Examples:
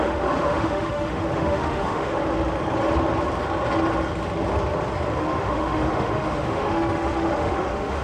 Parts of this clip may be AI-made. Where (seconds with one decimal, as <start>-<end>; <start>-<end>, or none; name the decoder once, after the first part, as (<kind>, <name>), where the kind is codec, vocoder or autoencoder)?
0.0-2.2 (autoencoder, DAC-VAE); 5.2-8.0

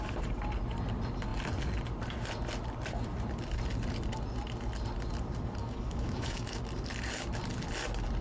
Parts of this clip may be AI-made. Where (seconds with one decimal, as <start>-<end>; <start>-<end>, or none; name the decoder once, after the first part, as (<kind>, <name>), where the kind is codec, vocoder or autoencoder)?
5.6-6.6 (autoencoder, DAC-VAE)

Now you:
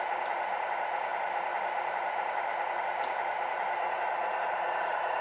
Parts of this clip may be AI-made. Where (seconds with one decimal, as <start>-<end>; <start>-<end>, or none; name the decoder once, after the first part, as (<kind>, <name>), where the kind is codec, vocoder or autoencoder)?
0.0-5.2 (vocoder, BigVGAN v2)

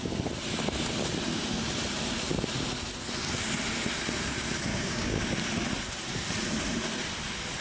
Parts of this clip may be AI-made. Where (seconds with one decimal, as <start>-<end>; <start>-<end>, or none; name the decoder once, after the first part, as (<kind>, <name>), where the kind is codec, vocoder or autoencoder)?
4.7-5.2 (codec, DAC)

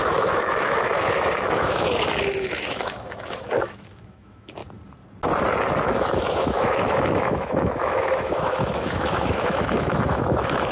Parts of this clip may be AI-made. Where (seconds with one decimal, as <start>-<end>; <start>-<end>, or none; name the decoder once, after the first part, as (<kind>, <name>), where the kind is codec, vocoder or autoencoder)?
0.0-4.6 (autoencoder, DAC-VAE); 5.8-10.7